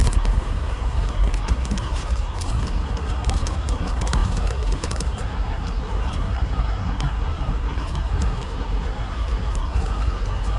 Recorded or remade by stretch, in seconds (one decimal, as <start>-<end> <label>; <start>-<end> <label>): 0.0-10.6 remade